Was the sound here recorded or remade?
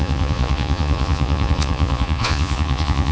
remade